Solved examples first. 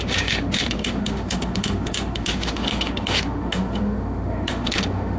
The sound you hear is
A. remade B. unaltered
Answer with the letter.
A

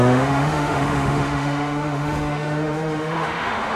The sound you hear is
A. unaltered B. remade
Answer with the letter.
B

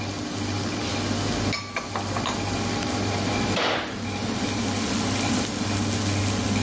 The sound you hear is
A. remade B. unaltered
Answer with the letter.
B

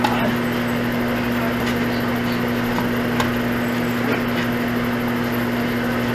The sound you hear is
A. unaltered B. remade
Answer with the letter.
A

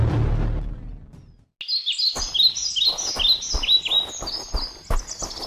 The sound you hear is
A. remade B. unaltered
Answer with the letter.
B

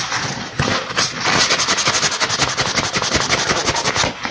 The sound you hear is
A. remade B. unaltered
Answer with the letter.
B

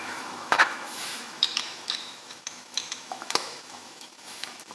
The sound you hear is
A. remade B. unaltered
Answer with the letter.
A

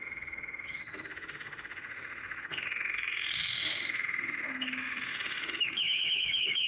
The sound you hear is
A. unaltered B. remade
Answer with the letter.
B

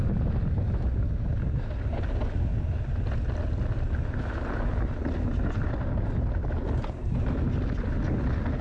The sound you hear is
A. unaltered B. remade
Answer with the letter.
A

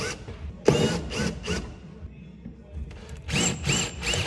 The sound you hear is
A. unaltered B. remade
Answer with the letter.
A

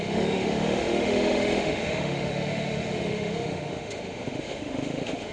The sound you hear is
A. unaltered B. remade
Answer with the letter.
B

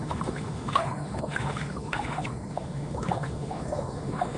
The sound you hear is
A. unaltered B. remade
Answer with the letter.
B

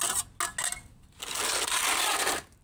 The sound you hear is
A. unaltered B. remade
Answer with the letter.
A